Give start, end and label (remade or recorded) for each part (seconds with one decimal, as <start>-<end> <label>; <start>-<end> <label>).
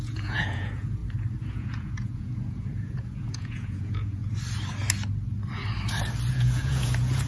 0.0-1.0 remade; 1.0-1.5 recorded; 1.5-4.2 remade; 4.2-6.3 recorded; 6.3-7.3 remade